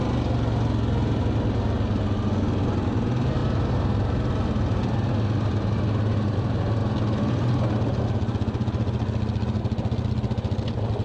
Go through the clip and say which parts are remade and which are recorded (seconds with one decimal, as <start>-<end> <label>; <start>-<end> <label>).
0.0-11.0 recorded